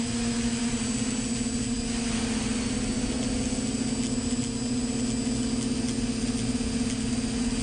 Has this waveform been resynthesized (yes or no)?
no